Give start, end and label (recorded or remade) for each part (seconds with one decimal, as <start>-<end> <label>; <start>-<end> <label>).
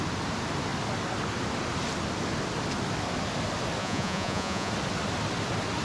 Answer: 0.0-3.8 recorded; 3.8-4.7 remade; 4.7-5.8 recorded